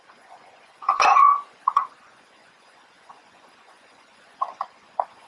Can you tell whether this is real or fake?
fake